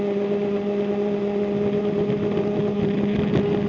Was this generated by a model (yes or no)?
no